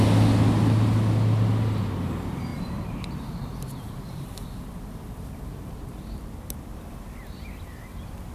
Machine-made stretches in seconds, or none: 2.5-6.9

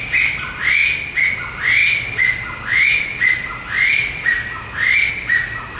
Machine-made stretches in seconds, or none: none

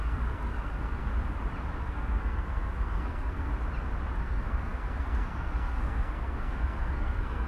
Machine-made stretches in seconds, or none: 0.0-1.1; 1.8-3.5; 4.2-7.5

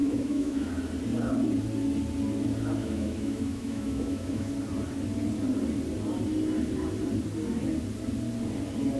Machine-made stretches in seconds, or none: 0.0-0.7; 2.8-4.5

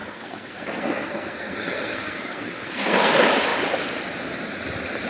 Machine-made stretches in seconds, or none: 0.0-3.1

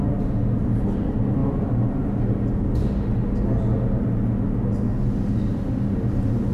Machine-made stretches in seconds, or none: none

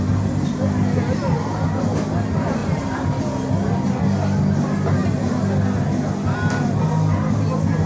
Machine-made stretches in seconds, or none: 2.6-3.2